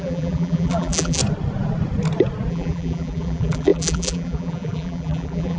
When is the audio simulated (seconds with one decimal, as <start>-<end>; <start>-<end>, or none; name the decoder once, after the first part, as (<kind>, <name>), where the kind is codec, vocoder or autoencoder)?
0.0-1.2 (vocoder, BigVGAN v2); 2.5-5.6